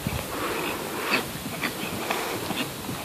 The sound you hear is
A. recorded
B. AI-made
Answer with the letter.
A